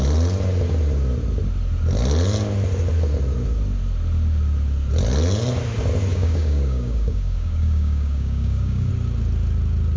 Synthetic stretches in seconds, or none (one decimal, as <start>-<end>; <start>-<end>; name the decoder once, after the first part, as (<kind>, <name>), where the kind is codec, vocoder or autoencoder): 6.1-8.9 (codec, DAC)